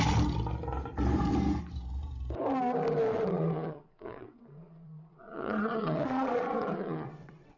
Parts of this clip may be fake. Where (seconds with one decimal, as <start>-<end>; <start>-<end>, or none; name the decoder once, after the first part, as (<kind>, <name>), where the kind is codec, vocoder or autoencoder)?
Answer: 3.1-7.6 (vocoder, WaveNeXt)